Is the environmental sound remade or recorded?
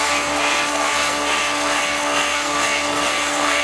remade